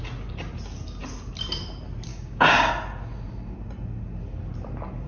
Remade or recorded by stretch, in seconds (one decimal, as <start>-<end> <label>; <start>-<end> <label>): 0.0-2.1 recorded; 2.1-2.7 remade; 2.7-5.1 recorded